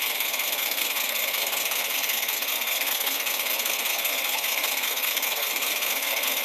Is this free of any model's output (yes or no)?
no